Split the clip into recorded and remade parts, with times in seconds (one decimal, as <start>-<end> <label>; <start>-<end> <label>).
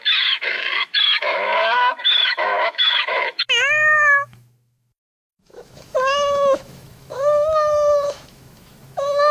0.0-9.3 remade